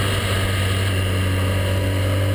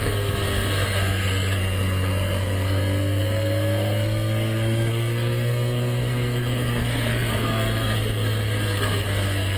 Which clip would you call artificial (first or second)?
second